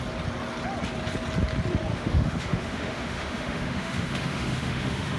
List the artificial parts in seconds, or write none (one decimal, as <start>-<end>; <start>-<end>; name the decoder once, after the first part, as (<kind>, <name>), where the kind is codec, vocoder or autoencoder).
1.9-5.2 (autoencoder, DAC-VAE)